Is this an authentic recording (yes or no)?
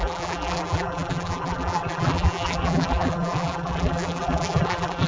no